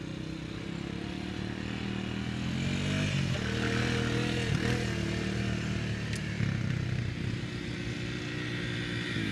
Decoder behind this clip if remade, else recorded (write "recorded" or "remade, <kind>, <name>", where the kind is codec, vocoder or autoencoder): recorded